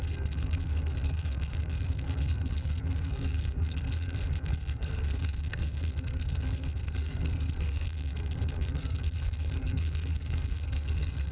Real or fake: fake